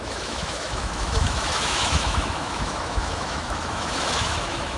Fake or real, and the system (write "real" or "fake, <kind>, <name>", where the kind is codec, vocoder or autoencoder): fake, autoencoder, DAC-VAE